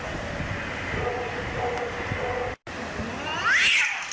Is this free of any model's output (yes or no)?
yes